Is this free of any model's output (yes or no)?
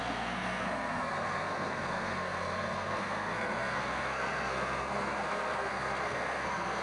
no